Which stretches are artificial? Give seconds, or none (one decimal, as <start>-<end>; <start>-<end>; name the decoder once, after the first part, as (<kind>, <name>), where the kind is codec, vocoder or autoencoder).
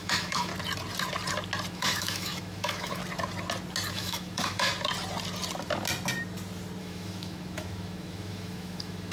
0.0-0.5 (autoencoder, DAC-VAE); 1.7-3.0; 3.9-4.7; 6.8-9.1